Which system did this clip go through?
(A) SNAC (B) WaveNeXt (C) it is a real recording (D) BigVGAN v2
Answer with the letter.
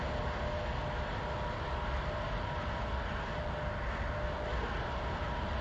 C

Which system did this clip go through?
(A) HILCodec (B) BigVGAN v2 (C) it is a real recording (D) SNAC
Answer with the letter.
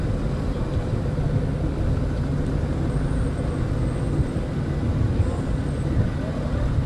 C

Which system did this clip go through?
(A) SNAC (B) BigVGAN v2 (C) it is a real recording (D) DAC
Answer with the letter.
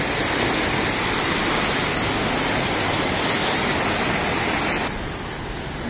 C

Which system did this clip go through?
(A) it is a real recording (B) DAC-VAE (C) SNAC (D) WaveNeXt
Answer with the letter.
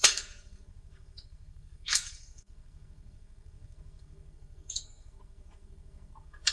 C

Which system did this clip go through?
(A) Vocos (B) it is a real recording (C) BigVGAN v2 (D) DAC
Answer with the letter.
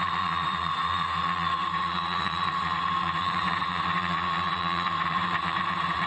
A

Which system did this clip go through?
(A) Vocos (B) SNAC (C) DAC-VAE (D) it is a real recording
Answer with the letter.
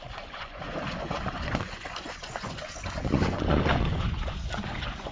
A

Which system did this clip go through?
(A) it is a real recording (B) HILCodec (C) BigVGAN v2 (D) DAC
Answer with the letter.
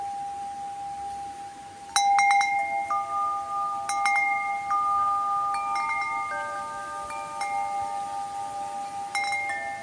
A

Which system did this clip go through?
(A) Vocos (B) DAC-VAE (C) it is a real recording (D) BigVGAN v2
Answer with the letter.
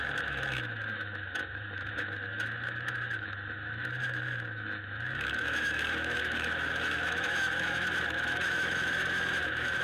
B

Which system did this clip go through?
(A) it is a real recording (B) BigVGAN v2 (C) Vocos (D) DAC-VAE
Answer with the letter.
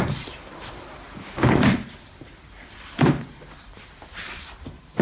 B